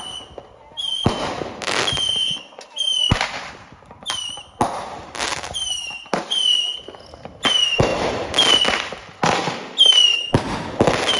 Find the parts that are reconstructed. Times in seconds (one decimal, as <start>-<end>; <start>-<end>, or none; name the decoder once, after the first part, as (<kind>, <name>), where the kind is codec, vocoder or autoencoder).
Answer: none